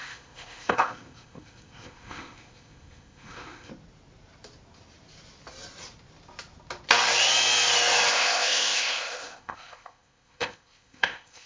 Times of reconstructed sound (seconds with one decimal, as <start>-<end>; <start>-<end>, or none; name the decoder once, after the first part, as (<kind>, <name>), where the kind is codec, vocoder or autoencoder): 0.0-3.7 (codec, ZipCodec); 8.1-11.5